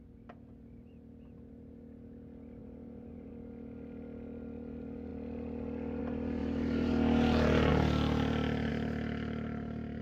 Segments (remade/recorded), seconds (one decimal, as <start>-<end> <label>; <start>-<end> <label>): 0.0-2.6 recorded; 2.6-3.3 remade; 3.3-6.4 recorded; 6.4-6.9 remade; 6.9-10.0 recorded